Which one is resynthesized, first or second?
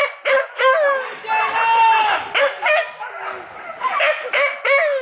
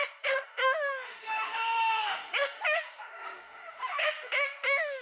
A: second